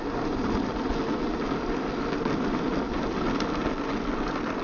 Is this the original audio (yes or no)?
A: yes